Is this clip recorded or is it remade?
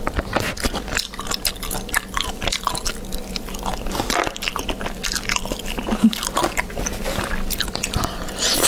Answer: recorded